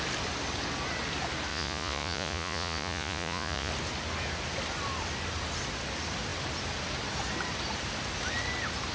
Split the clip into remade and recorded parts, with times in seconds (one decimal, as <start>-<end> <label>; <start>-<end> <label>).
0.0-1.5 recorded; 1.5-3.7 remade; 3.7-8.9 recorded